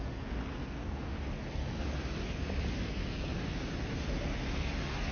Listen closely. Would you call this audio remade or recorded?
recorded